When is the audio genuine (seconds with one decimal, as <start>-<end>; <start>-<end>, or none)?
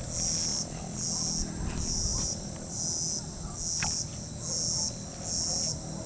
0.0-0.5; 1.0-2.1; 2.8-6.1